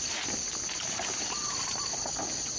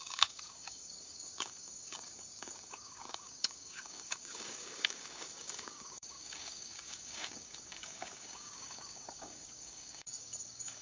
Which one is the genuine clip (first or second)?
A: first